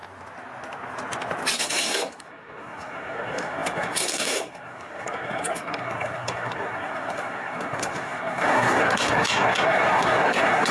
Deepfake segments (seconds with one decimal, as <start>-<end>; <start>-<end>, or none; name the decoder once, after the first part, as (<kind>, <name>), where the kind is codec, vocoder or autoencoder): 1.6-10.7 (codec, SNAC)